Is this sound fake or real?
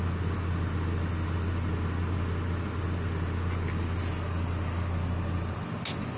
real